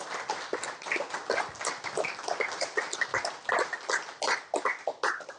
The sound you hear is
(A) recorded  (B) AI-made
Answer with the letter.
A